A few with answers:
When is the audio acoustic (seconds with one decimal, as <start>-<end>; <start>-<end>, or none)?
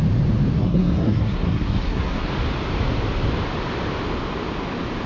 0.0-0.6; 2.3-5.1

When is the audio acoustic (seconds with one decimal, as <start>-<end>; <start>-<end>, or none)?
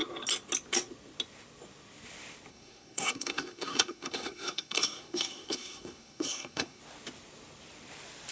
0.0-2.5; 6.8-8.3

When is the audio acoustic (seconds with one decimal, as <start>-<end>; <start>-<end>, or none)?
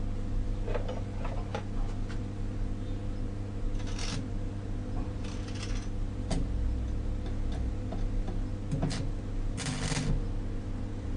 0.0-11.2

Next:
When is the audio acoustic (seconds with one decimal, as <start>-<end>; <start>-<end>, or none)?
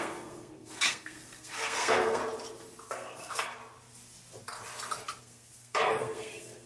2.2-2.9; 3.6-5.2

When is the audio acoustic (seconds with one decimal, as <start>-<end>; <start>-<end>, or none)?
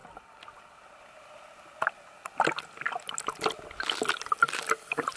0.0-5.2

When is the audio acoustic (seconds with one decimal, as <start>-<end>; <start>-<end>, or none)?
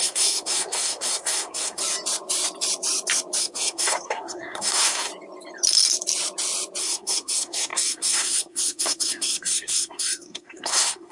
1.8-3.4; 5.1-6.8